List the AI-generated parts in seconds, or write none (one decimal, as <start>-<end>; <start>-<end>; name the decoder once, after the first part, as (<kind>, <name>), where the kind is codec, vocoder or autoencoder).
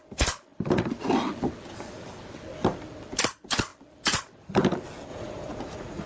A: 5.1-6.1 (vocoder, Vocos)